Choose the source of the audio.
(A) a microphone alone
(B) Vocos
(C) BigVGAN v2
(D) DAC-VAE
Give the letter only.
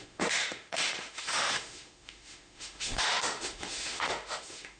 D